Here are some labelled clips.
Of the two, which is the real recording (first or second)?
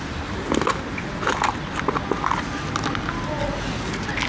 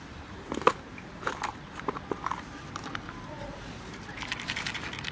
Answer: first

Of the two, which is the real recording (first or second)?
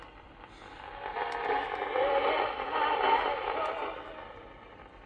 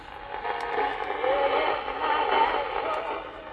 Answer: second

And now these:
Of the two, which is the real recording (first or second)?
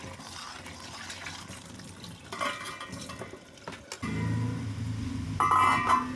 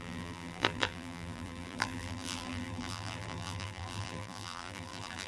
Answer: first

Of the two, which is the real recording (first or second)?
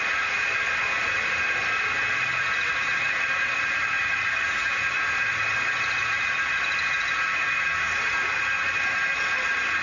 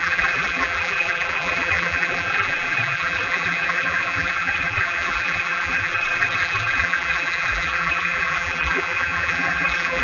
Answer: first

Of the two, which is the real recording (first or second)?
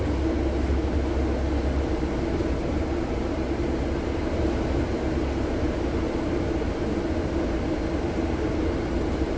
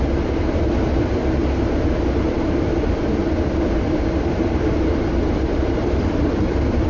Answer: first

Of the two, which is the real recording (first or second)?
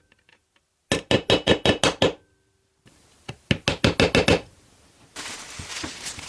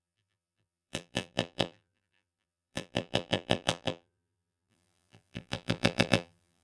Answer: first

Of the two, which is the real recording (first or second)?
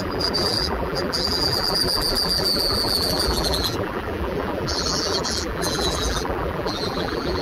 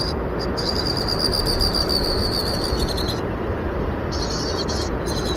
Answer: second